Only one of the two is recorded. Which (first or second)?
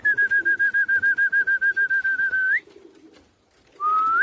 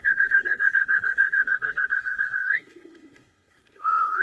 first